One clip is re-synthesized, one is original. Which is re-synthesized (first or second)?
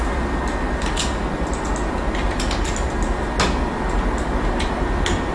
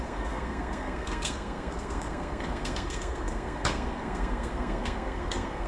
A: second